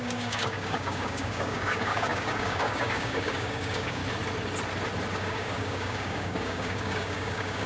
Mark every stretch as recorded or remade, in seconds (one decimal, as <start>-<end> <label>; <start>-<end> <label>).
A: 0.0-4.0 remade; 4.0-5.1 recorded; 5.1-7.7 remade